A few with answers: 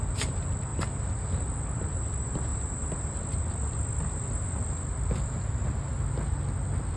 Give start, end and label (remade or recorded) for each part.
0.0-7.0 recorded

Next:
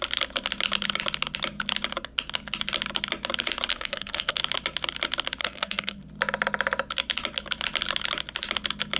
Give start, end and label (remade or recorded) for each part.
0.0-3.7 recorded; 3.7-4.4 remade; 4.4-5.4 recorded; 5.4-6.0 remade; 6.0-9.0 recorded

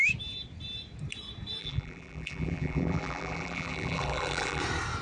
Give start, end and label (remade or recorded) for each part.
0.0-1.6 recorded; 1.6-4.6 remade; 4.6-5.0 recorded

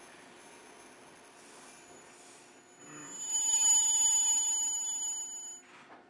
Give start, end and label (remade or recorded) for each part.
0.0-6.1 recorded

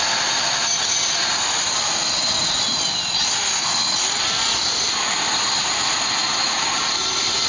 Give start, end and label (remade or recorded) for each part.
0.0-7.5 recorded

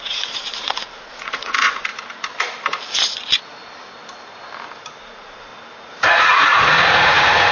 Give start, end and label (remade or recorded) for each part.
0.0-1.9 remade; 1.9-5.0 recorded; 5.0-5.5 remade; 5.5-6.2 recorded; 6.2-7.5 remade

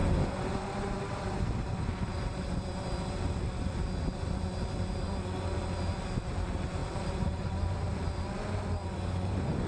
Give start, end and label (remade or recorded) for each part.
0.0-2.7 remade; 2.7-6.8 recorded; 6.8-7.9 remade; 7.9-9.7 recorded